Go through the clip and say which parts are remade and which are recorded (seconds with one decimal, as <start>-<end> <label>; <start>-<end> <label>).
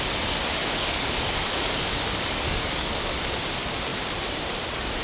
0.0-0.6 recorded; 0.6-3.4 remade; 3.4-5.0 recorded